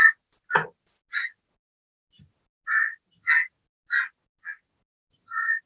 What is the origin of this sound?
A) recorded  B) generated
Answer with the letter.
A